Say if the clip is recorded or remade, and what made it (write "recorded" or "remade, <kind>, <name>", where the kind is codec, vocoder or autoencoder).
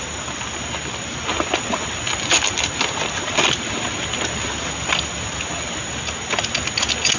recorded